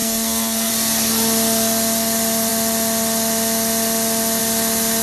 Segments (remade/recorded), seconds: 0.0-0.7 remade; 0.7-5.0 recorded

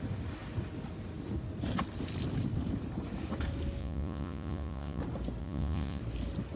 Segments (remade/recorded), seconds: 0.0-3.8 recorded; 3.8-5.0 remade; 5.0-5.4 recorded; 5.4-6.0 remade; 6.0-6.6 recorded

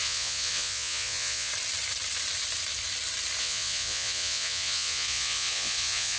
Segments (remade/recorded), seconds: 0.0-1.5 remade; 1.5-3.4 recorded; 3.4-6.2 remade

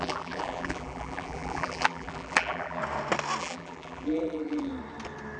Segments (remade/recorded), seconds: 0.0-2.8 remade; 2.8-3.4 recorded; 3.4-4.7 remade; 4.7-5.4 recorded